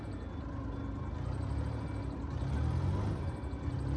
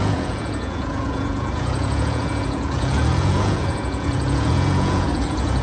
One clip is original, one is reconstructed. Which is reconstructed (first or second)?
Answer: second